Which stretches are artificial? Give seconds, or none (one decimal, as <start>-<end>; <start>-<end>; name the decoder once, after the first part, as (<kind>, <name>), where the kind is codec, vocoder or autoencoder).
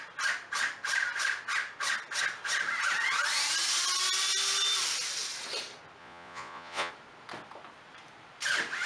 6.0-6.9 (vocoder, Vocos)